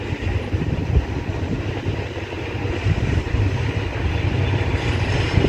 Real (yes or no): yes